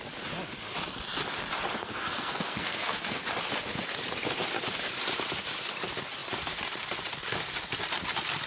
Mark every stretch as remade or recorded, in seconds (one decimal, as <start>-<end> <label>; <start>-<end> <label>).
0.0-1.8 recorded; 1.8-3.2 remade; 3.2-8.5 recorded